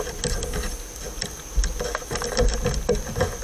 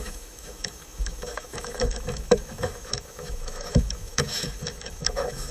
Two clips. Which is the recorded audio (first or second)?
first